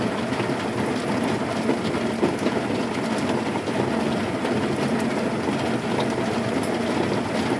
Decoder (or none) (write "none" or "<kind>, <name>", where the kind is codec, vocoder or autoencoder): none